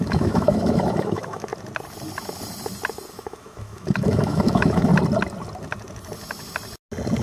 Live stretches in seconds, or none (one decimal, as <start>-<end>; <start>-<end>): 1.5-3.1; 4.9-7.2